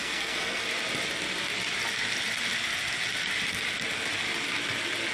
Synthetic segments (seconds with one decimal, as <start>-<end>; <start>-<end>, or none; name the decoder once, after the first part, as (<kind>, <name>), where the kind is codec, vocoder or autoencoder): 0.0-0.6 (codec, SNAC)